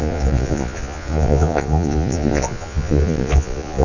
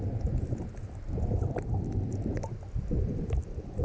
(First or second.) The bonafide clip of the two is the second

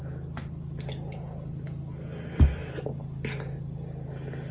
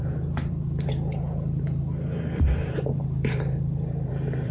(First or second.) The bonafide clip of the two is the first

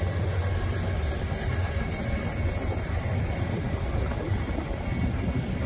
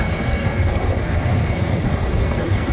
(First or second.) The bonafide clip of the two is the first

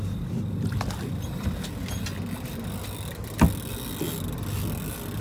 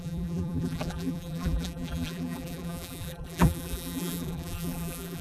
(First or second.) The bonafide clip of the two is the first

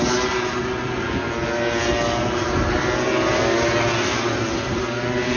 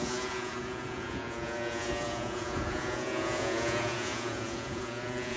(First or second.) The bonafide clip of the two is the first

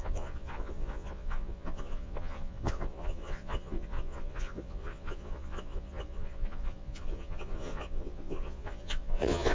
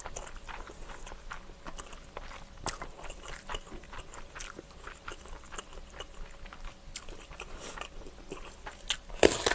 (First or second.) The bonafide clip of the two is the second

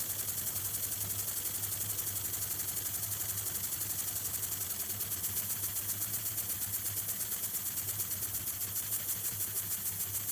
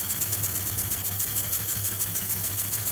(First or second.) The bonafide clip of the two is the first